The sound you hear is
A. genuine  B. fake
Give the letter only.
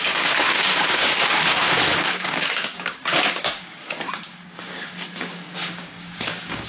B